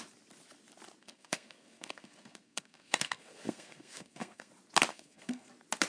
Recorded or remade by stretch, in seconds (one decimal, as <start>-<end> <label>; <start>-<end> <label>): 0.0-1.0 recorded; 1.0-4.5 remade; 4.5-4.9 recorded; 4.9-5.5 remade; 5.5-5.9 recorded